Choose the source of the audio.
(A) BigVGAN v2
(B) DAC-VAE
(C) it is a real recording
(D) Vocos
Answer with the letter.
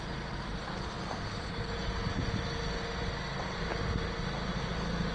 C